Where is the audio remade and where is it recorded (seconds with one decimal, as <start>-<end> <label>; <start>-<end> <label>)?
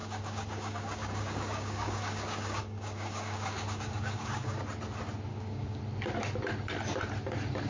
0.0-4.6 remade; 4.6-5.3 recorded; 5.3-5.8 remade; 5.8-7.7 recorded